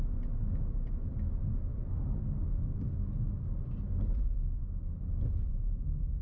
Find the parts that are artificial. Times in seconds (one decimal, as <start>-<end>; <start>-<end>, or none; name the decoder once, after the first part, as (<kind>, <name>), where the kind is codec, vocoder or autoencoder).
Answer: none